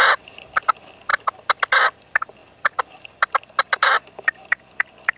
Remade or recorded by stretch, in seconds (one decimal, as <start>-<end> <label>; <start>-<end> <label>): 0.0-5.2 recorded

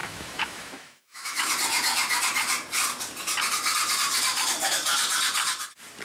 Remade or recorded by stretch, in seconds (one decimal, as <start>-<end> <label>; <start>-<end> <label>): 0.0-1.5 remade; 1.5-6.0 recorded

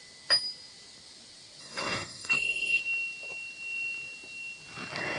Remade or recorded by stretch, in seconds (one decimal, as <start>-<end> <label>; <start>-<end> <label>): 0.0-1.6 recorded; 1.6-2.8 remade; 2.8-5.2 recorded

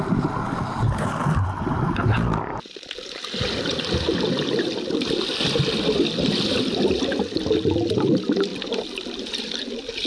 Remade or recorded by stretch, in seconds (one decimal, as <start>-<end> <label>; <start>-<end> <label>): 0.0-10.1 recorded

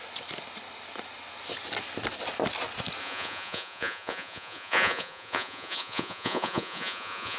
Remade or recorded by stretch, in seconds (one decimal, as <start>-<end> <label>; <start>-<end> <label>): 0.0-3.0 recorded; 3.0-7.4 remade

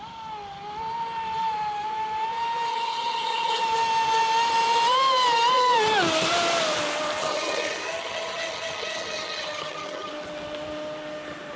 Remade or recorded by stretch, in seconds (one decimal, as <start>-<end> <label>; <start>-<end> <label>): 0.0-2.7 recorded; 2.7-3.6 remade; 3.6-7.2 recorded; 7.2-10.1 remade; 10.1-11.6 recorded

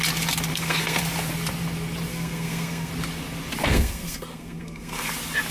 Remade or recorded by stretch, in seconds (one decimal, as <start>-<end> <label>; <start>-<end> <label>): 0.0-0.5 recorded; 0.5-1.0 remade; 1.0-2.1 recorded; 2.1-2.9 remade; 2.9-3.6 recorded; 3.6-5.1 remade; 5.1-5.5 recorded

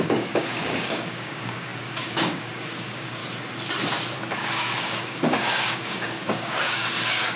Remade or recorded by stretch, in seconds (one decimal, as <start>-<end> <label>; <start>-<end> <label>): 0.0-3.2 remade; 3.2-4.3 recorded; 4.3-7.4 remade